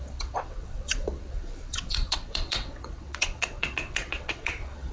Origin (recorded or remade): remade